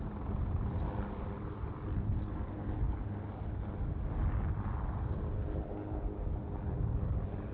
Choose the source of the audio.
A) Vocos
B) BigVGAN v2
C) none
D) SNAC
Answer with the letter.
C